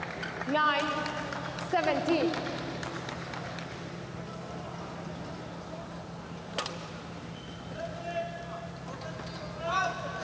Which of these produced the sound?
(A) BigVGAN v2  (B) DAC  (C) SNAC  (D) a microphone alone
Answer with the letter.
D